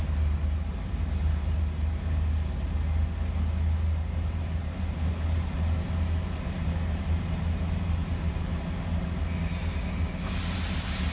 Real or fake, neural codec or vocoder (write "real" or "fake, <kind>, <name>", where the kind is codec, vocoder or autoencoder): real